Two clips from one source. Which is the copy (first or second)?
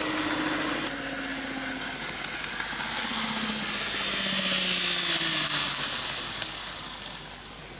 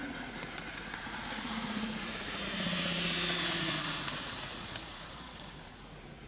second